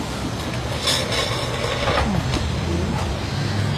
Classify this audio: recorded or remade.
recorded